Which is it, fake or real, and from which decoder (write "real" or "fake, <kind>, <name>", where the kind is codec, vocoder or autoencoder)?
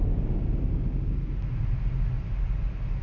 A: real